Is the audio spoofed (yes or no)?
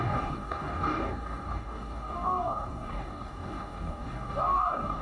yes